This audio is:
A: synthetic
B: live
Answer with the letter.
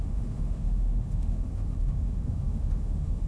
A